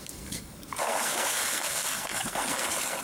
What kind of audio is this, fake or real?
fake